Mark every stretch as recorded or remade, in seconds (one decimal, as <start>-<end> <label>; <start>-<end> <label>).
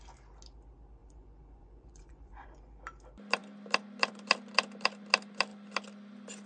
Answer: 0.0-1.0 recorded; 1.0-2.7 remade; 2.7-6.5 recorded